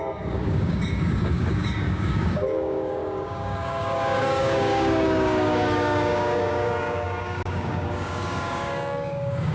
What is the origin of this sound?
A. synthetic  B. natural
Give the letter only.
A